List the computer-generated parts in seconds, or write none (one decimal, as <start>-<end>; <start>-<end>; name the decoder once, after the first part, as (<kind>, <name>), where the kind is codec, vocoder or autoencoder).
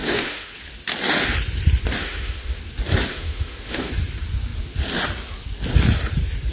0.0-0.5 (autoencoder, DAC-VAE); 2.0-2.6; 3.1-3.9